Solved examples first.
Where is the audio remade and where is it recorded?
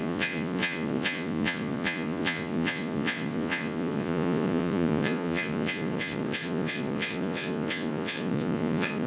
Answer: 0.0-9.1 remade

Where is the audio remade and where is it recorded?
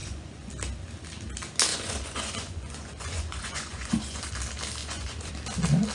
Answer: 0.0-0.5 remade; 0.5-1.7 recorded; 1.7-4.3 remade; 4.3-4.8 recorded; 4.8-5.3 remade; 5.3-5.9 recorded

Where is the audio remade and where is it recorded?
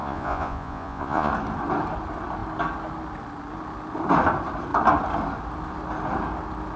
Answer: 0.0-1.3 remade; 1.3-6.8 recorded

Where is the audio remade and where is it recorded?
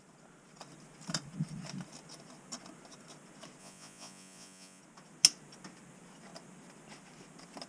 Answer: 0.0-3.6 recorded; 3.6-4.8 remade; 4.8-7.7 recorded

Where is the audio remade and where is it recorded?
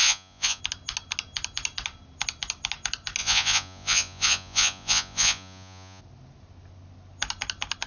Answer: 0.0-0.6 remade; 0.6-3.2 recorded; 3.2-6.0 remade; 6.0-7.9 recorded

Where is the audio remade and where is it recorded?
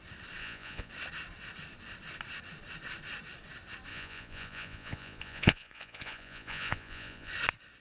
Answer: 0.0-0.4 recorded; 0.4-0.9 remade; 0.9-3.9 recorded; 3.9-7.3 remade; 7.3-7.8 recorded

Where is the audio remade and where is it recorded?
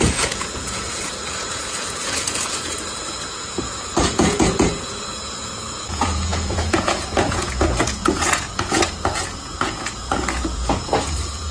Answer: 0.0-11.5 remade